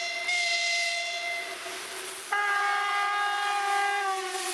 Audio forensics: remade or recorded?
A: recorded